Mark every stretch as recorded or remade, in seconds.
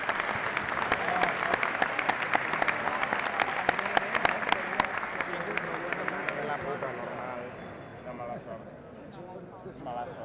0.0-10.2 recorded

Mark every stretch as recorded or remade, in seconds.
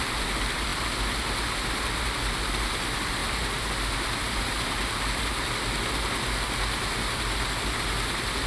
0.0-8.5 recorded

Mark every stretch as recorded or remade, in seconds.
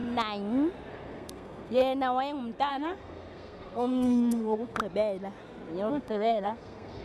0.0-0.9 recorded; 0.9-1.8 remade; 1.8-2.7 recorded; 2.7-4.8 remade; 4.8-5.9 recorded; 5.9-7.0 remade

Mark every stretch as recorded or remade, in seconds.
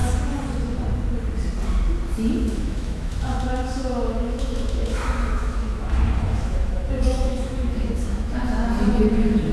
0.0-2.3 recorded; 2.3-8.6 remade; 8.6-9.1 recorded; 9.1-9.5 remade